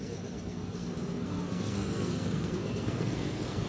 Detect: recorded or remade remade